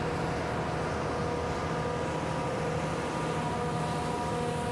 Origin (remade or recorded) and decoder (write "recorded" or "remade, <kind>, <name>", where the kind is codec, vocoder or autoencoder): recorded